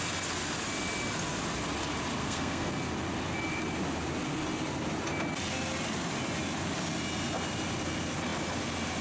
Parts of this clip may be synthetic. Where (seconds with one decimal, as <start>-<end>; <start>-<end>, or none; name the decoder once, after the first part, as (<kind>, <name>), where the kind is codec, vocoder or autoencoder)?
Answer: 2.2-2.7 (codec, SNAC)